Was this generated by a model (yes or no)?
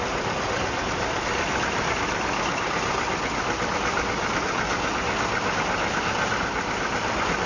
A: no